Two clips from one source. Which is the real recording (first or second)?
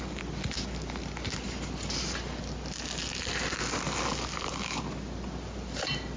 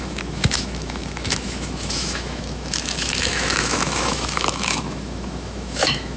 first